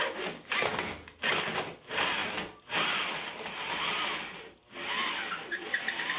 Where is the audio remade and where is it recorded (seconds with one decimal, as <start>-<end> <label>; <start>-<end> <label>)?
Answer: 0.0-6.2 recorded